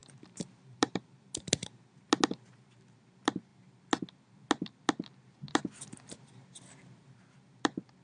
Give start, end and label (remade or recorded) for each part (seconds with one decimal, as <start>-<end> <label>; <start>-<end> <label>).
0.0-2.0 remade; 2.0-8.0 recorded